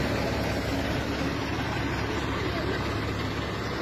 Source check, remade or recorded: recorded